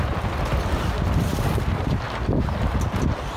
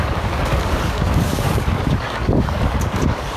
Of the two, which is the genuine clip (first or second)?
first